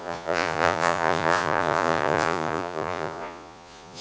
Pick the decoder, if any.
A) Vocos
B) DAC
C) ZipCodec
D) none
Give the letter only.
A